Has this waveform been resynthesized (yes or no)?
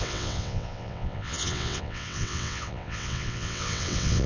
yes